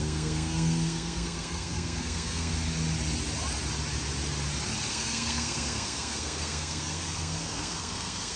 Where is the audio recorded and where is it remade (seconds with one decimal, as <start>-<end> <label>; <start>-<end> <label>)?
0.0-2.5 remade; 2.5-4.9 recorded; 4.9-8.4 remade